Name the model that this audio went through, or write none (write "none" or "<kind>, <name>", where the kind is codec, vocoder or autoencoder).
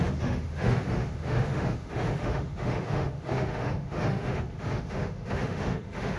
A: autoencoder, DAC-VAE